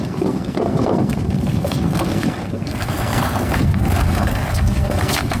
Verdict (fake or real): fake